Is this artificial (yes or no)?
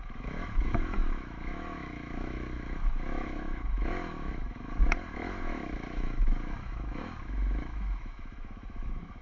yes